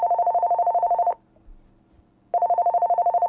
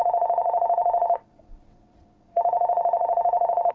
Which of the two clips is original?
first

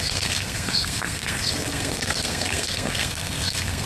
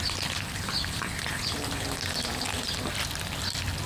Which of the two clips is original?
second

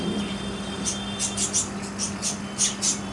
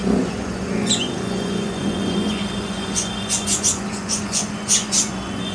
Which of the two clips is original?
first